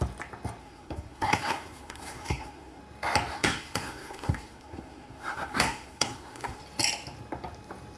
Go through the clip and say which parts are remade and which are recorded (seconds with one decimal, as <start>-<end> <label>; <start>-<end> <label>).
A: 0.0-0.6 recorded; 0.6-2.8 remade; 2.8-3.3 recorded; 3.3-6.6 remade; 6.6-8.0 recorded